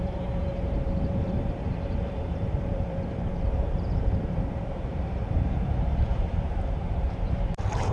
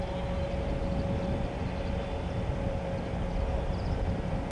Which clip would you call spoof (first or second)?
first